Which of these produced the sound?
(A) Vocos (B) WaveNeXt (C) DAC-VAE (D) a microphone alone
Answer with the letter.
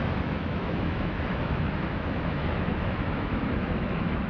C